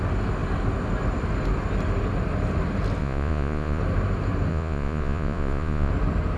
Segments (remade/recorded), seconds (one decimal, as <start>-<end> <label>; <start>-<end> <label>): 0.0-3.0 recorded; 3.0-3.8 remade; 3.8-4.5 recorded; 4.5-5.9 remade; 5.9-6.4 recorded